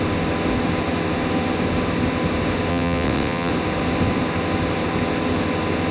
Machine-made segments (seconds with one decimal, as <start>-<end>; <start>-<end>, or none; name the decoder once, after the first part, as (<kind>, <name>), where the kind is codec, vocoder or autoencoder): 2.7-3.5 (vocoder, WaveNeXt)